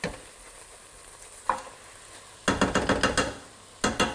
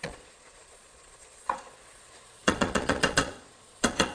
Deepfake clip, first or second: second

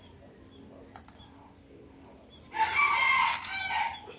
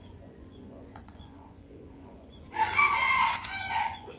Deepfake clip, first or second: second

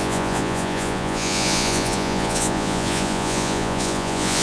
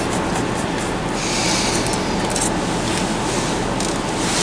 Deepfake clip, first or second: first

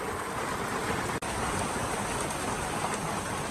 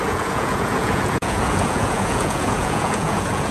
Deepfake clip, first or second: second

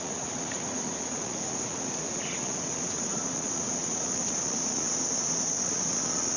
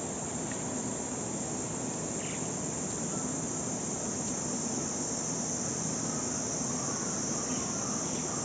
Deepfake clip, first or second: first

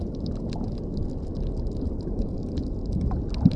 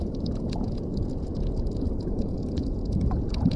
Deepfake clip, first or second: second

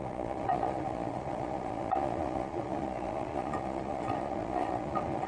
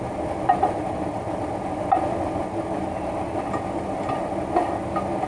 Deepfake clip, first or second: first